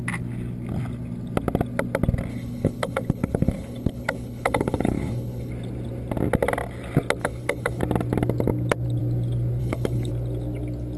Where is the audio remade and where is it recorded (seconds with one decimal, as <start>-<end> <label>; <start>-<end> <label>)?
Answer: 0.0-2.3 recorded; 2.3-5.5 remade; 5.5-7.2 recorded; 7.2-7.8 remade; 7.8-9.6 recorded; 9.6-10.1 remade; 10.1-11.0 recorded